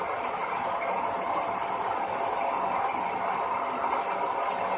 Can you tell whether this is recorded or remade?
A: recorded